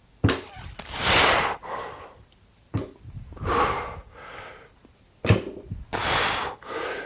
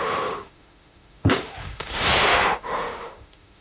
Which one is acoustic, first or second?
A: first